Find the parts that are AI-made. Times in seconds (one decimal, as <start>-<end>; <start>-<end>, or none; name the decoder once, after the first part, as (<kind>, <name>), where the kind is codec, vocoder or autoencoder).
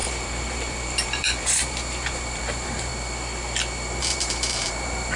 0.0-2.9 (vocoder, BigVGAN v2); 4.0-5.2